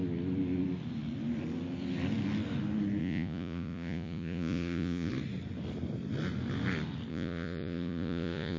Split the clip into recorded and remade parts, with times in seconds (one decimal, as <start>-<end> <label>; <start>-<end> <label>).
0.0-3.0 recorded; 3.0-5.1 remade; 5.1-7.1 recorded; 7.1-8.6 remade